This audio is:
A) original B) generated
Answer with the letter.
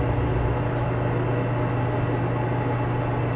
A